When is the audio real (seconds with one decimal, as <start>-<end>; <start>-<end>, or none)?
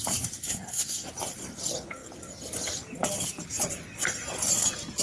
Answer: 0.0-0.4; 1.1-5.0